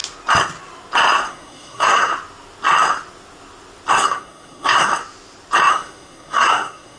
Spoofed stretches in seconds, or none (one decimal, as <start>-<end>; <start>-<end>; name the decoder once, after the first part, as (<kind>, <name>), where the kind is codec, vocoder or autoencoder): 1.3-2.1 (codec, SNAC); 3.9-4.9; 5.7-7.0

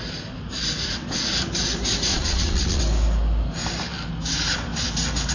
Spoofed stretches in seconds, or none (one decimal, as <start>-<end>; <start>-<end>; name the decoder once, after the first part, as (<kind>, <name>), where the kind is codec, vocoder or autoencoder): 2.1-2.8 (vocoder, Vocos)

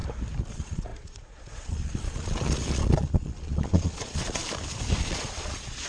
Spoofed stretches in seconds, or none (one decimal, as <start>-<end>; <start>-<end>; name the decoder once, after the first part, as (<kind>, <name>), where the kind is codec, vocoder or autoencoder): 0.5-4.4 (vocoder, Vocos); 5.0-5.9

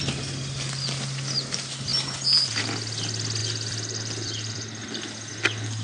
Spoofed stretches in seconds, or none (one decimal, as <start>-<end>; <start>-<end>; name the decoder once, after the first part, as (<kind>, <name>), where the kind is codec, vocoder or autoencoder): 3.4-5.3 (vocoder, BigVGAN v2)

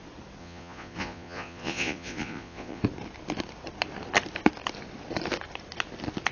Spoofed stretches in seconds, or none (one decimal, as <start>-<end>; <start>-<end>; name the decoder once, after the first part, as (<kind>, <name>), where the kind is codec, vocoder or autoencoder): 0.4-2.8 (vocoder, Vocos)

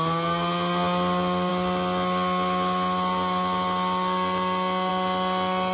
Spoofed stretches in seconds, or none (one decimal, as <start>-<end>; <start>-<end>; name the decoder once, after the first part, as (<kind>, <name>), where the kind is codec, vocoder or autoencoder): none